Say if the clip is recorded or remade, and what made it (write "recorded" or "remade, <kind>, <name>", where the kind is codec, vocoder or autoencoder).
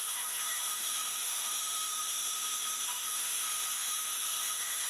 remade, autoencoder, DAC-VAE